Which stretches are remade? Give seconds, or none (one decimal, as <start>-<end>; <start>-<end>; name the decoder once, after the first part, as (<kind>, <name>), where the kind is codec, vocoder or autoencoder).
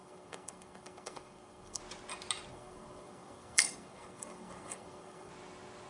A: 0.0-1.8 (codec, SNAC); 2.5-5.3